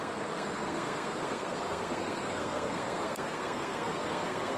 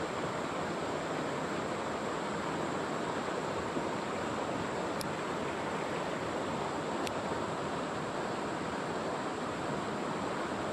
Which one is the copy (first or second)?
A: first